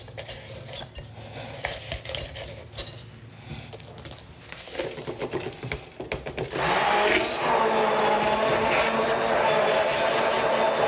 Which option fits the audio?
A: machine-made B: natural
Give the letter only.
B